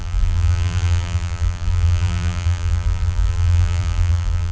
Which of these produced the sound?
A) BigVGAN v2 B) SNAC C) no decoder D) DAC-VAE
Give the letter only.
A